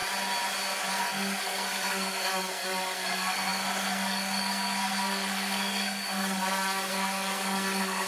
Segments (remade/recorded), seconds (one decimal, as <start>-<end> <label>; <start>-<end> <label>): 0.0-0.9 recorded; 0.9-8.1 remade